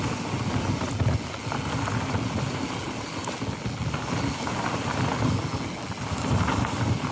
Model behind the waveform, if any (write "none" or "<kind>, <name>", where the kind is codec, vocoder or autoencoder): none